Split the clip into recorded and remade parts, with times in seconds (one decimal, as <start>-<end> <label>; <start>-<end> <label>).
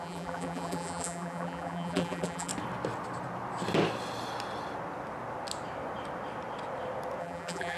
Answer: 0.0-2.5 remade; 2.5-7.2 recorded; 7.2-7.8 remade